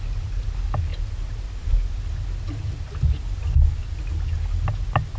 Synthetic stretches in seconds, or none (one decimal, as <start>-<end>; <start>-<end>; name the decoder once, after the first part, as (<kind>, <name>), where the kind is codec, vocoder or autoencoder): none